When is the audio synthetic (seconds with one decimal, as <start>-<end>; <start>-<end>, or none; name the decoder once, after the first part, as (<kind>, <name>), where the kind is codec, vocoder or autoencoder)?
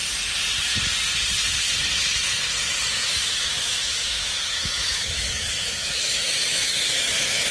2.9-7.5 (autoencoder, DAC-VAE)